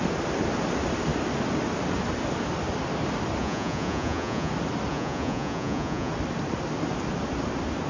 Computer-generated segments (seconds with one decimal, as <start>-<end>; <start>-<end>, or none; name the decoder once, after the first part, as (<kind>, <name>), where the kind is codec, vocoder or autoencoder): 3.4-4.5 (vocoder, Vocos); 4.9-6.1